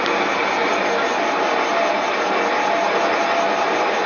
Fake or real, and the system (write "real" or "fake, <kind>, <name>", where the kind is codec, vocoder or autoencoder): real